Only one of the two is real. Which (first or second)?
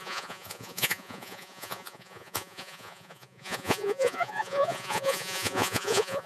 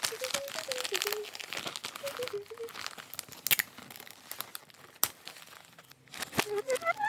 second